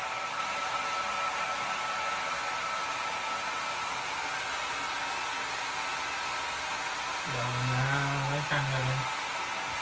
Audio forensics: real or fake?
real